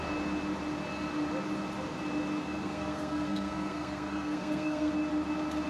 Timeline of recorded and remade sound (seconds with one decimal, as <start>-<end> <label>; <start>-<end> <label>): 0.0-2.4 recorded; 2.4-4.9 remade; 4.9-5.7 recorded